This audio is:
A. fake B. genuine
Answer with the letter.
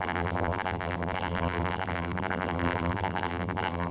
A